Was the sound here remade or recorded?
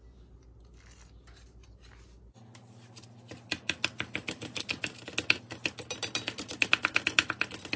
recorded